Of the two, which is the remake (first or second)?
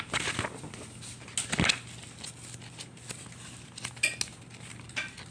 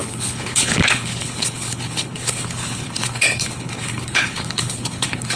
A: second